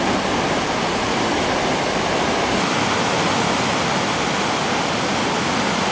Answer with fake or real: real